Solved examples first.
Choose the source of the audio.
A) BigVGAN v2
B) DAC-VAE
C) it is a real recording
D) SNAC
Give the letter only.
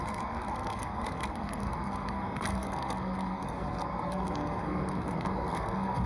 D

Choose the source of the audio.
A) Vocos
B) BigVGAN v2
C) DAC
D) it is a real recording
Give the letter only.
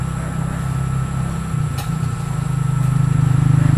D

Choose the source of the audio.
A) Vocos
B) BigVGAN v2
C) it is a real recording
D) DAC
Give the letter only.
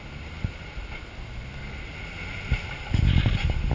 C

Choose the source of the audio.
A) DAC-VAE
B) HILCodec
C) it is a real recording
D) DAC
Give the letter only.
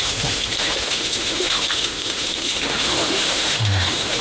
A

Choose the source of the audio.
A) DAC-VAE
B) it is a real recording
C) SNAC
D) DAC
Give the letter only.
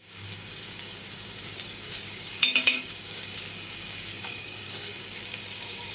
D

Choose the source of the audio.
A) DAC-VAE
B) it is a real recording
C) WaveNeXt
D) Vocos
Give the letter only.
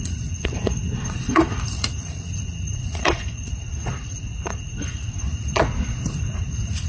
D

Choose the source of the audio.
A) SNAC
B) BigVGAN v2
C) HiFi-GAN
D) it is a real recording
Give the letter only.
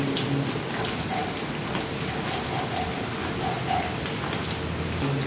D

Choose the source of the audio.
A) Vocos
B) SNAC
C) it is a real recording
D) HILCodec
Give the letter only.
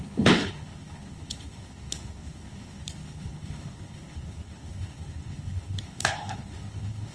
D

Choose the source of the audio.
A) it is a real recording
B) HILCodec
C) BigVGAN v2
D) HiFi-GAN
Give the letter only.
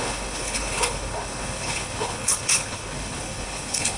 B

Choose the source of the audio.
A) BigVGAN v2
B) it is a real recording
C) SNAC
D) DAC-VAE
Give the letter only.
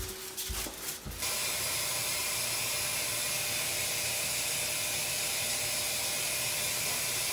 B